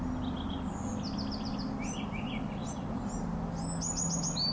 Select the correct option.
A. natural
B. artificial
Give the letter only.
A